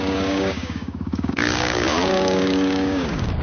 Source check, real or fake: fake